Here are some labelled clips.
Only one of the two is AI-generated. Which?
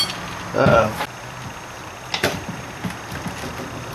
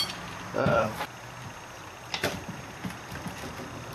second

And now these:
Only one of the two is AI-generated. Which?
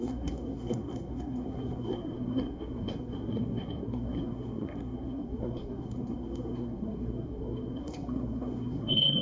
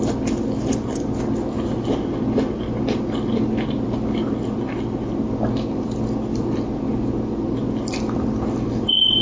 first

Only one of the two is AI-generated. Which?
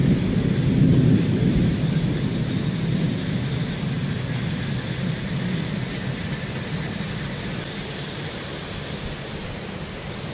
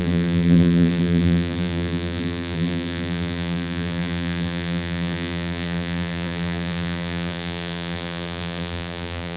second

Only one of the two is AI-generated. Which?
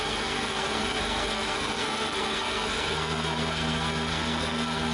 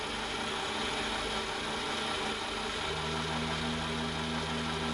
first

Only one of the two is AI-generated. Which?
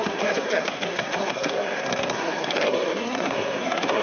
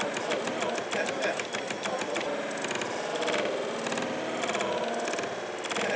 first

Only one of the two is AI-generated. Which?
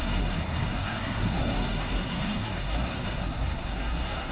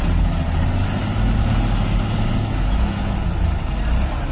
first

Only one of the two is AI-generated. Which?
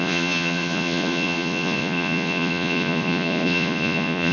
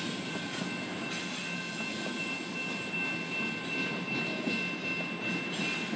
first